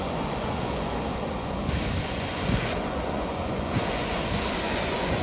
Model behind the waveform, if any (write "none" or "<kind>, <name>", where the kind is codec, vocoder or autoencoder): vocoder, Vocos